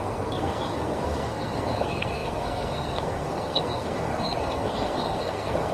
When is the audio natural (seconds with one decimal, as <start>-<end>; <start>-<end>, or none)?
none